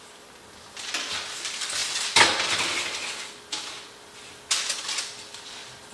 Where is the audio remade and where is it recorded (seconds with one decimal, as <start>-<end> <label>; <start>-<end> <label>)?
0.0-1.8 recorded; 1.8-2.5 remade; 2.5-5.9 recorded